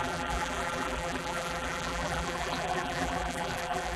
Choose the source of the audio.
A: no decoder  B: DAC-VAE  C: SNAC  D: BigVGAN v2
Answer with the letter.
D